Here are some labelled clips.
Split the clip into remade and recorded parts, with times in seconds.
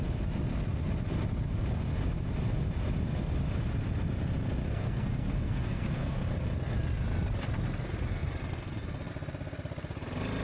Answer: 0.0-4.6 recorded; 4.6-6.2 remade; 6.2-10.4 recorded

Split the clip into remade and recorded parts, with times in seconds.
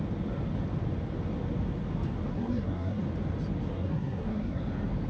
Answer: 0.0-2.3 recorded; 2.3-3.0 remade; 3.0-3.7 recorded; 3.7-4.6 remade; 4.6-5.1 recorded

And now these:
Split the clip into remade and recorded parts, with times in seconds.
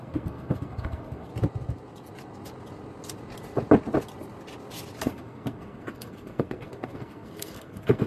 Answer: 0.0-1.3 remade; 1.3-5.0 recorded; 5.0-8.1 remade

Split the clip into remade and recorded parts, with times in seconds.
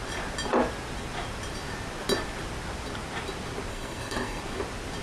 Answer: 0.0-3.7 recorded; 3.7-4.4 remade; 4.4-5.0 recorded